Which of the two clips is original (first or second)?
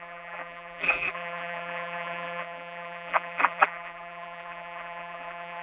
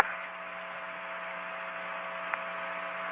second